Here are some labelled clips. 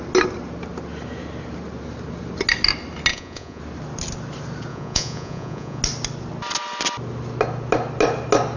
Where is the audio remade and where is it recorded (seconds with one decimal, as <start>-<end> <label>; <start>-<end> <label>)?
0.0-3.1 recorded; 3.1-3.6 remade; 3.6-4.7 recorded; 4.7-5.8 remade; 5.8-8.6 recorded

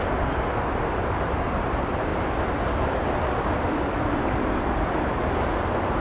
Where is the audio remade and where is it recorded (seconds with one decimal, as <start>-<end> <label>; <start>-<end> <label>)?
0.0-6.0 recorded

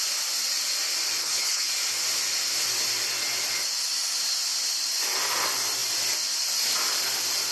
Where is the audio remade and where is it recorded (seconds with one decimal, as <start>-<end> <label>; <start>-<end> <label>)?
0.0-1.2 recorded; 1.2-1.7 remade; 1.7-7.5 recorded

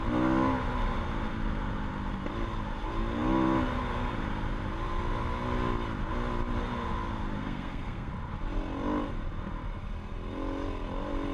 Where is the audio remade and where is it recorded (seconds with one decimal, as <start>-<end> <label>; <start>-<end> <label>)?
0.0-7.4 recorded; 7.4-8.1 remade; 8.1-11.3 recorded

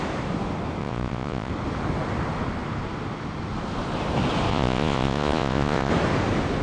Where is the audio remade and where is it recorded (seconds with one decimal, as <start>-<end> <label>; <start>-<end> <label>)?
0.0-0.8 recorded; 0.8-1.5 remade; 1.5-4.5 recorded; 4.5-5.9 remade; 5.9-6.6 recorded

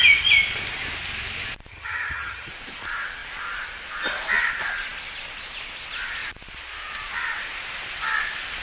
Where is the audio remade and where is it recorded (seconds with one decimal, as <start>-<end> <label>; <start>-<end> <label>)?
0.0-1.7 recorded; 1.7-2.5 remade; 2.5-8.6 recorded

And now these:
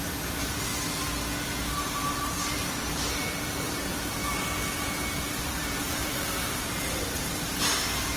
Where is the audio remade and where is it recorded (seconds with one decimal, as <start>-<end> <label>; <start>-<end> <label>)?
0.0-0.7 remade; 0.7-1.7 recorded; 1.7-8.2 remade

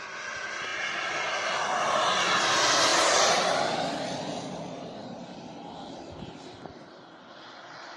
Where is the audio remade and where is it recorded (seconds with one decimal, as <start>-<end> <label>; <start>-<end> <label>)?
0.0-8.0 recorded